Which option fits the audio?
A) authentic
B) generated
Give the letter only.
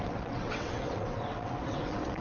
B